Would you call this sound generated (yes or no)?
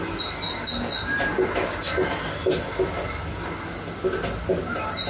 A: no